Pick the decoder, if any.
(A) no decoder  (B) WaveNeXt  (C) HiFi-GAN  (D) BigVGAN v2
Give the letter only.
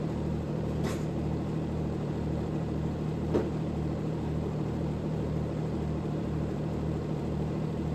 D